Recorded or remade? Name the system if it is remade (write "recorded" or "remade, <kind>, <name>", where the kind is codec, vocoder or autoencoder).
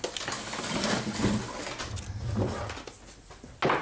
recorded